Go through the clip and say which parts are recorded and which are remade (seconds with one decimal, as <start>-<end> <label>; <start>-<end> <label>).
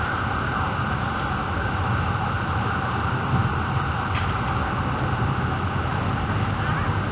0.0-7.1 recorded